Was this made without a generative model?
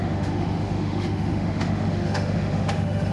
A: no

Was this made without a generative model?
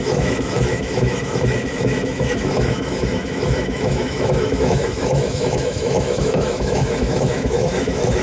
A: no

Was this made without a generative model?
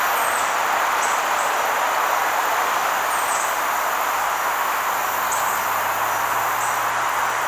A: yes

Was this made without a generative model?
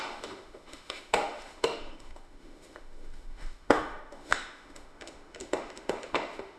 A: no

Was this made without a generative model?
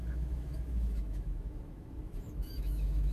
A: no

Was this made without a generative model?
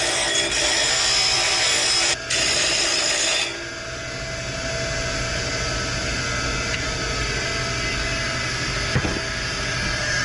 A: yes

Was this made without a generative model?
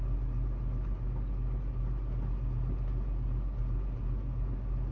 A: yes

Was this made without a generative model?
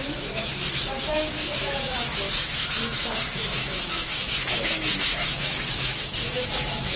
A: no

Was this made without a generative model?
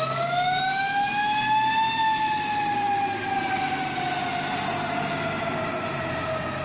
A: yes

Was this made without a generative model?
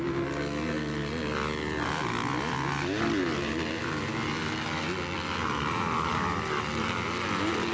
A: yes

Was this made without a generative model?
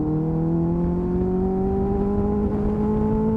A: yes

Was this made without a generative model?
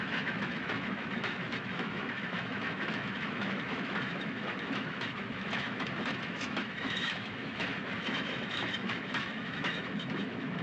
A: no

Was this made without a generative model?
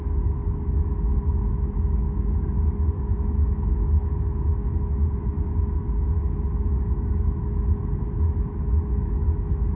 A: no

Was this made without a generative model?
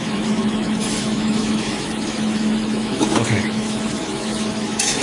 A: no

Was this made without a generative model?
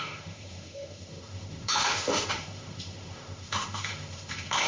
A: no